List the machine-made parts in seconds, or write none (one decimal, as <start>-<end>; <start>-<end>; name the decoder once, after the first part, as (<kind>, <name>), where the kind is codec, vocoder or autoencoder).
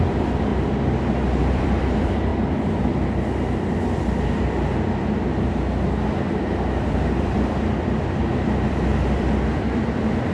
0.0-0.5 (vocoder, BigVGAN v2); 1.4-2.3; 6.2-10.3